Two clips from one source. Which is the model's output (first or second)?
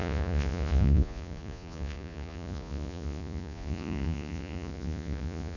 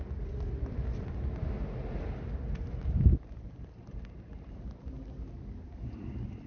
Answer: first